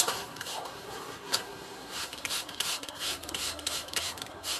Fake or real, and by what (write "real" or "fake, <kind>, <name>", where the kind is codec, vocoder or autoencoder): fake, codec, SNAC